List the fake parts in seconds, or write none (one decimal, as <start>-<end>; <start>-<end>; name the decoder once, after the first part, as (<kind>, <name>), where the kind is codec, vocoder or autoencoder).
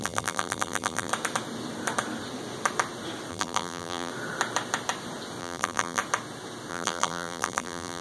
0.0-1.1 (vocoder, BigVGAN v2); 3.3-4.1; 5.4-6.0; 6.7-8.0